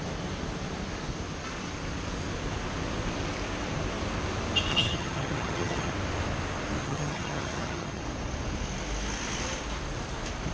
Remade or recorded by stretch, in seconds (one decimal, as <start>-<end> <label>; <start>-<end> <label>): 0.0-4.7 recorded; 4.7-5.9 remade; 5.9-6.8 recorded; 6.8-8.0 remade; 8.0-10.5 recorded